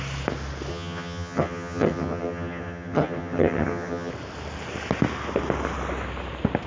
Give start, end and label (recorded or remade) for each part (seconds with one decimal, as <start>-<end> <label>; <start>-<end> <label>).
0.0-0.7 recorded; 0.7-4.1 remade; 4.1-6.7 recorded